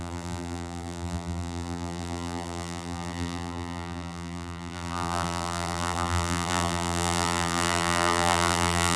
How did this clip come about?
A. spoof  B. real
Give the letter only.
A